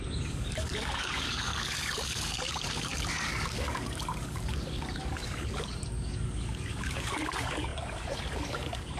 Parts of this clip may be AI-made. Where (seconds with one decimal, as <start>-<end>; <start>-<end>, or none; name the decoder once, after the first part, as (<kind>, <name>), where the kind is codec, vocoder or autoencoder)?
0.0-9.0 (codec, DAC)